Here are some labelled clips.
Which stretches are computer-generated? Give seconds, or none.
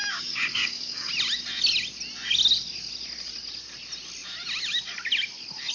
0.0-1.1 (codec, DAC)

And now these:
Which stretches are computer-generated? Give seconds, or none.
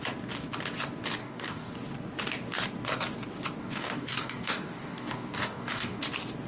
1.2-1.7 (codec, DAC); 3.6-6.0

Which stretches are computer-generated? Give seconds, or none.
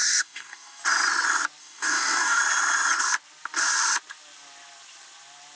0.0-0.8 (codec, DAC); 1.6-2.4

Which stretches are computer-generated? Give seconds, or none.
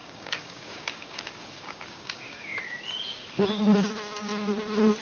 0.0-2.6 (codec, DAC); 3.2-3.9